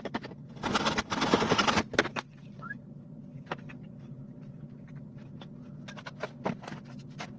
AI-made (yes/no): no